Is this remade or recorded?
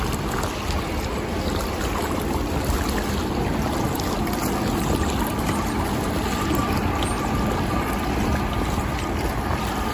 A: recorded